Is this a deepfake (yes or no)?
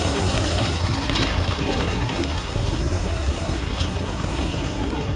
yes